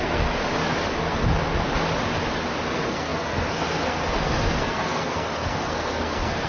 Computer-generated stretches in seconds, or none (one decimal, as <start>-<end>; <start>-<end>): 0.0-0.4; 0.9-1.3; 2.7-6.5